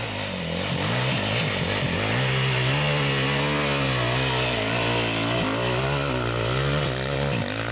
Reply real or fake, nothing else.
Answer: real